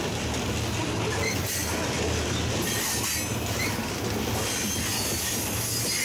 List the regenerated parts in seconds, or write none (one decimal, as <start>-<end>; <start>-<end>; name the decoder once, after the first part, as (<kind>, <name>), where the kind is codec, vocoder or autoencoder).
none